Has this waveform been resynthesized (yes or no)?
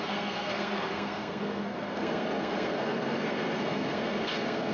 yes